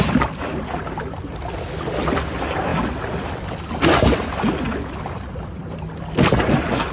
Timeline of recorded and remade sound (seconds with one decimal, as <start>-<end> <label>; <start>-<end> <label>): 0.0-6.9 recorded